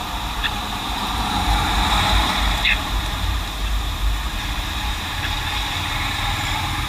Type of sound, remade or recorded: remade